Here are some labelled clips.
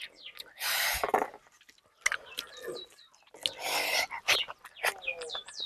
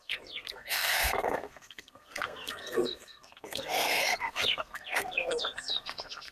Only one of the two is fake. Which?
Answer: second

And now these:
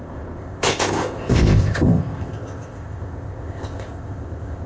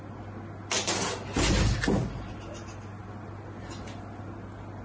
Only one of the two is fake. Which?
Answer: first